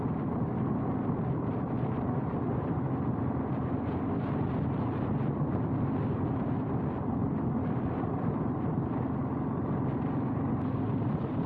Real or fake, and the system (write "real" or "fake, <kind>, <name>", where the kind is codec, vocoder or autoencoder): real